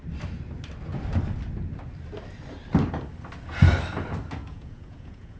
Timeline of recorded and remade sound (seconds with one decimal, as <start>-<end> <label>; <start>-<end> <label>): 0.0-4.4 recorded; 4.4-5.4 remade